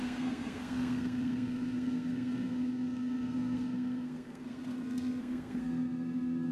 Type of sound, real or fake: fake